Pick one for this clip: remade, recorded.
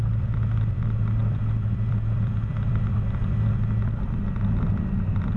remade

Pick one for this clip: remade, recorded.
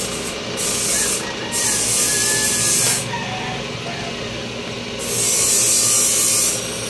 recorded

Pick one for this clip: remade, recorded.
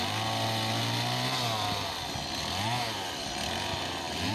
recorded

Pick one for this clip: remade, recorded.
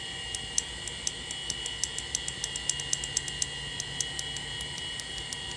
recorded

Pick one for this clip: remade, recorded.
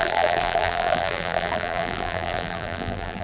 remade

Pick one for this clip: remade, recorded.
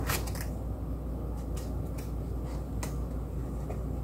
recorded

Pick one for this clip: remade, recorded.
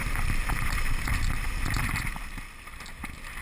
remade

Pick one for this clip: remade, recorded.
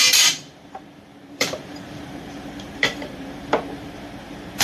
remade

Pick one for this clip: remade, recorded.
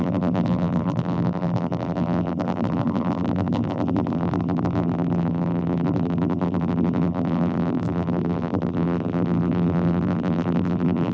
remade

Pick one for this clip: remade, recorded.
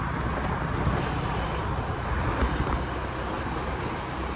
recorded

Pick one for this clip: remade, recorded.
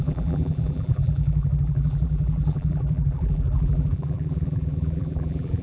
remade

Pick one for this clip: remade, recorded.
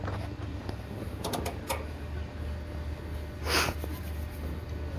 recorded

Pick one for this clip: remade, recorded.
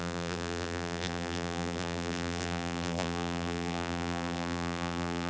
remade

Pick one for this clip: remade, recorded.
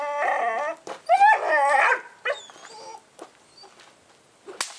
recorded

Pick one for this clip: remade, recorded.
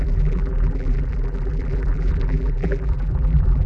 remade